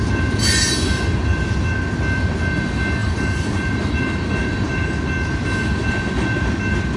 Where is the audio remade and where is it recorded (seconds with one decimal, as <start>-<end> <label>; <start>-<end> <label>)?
0.0-3.0 recorded; 3.0-4.0 remade; 4.0-7.0 recorded